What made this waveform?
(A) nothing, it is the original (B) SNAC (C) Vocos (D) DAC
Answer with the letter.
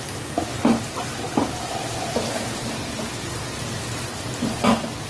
A